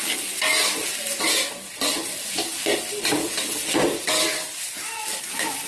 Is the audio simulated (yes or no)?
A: no